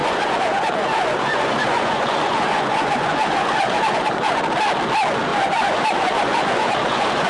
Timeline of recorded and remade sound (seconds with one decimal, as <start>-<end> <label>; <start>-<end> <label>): 0.0-4.4 remade; 4.4-5.3 recorded; 5.3-7.3 remade